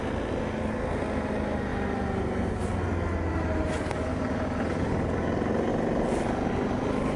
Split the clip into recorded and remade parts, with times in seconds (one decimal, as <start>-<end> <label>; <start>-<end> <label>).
0.0-7.2 recorded